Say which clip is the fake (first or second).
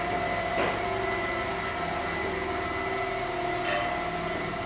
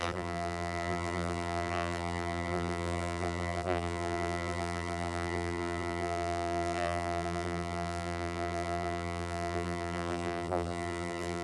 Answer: second